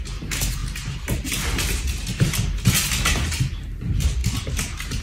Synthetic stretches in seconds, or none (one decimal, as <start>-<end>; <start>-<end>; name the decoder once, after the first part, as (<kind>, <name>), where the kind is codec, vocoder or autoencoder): none